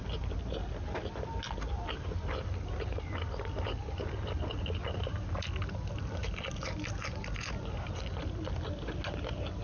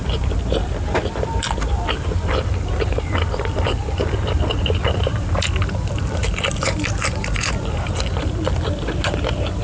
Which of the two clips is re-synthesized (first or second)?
second